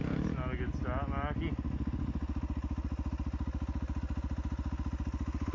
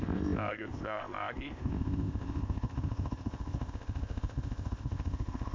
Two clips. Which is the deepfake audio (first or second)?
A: second